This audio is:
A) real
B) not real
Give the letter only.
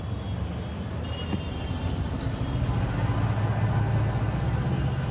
A